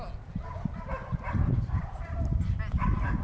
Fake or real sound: real